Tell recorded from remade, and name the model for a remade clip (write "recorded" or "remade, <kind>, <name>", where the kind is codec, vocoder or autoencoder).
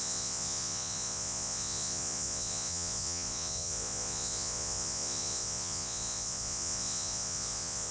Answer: remade, vocoder, Vocos